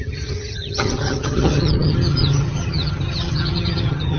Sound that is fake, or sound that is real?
fake